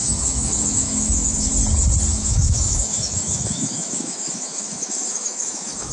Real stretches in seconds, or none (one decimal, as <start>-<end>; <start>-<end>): 1.5-2.1